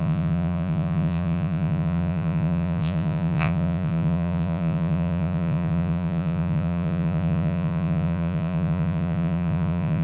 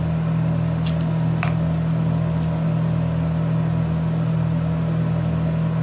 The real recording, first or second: second